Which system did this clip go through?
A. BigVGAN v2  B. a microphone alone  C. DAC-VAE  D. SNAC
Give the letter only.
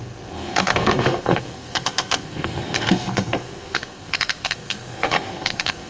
D